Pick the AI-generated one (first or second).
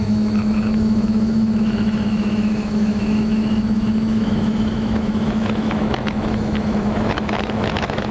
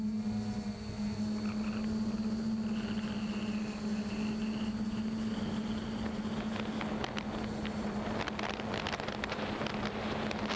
first